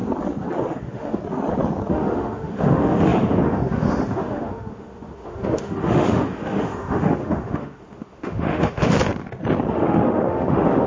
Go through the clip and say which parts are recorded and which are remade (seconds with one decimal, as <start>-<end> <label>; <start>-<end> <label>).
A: 0.0-0.7 recorded; 0.7-1.2 remade; 1.2-1.9 recorded; 1.9-9.1 remade; 9.1-9.7 recorded; 9.7-10.9 remade